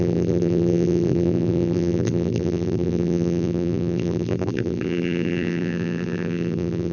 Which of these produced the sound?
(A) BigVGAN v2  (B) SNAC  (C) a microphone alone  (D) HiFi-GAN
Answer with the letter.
A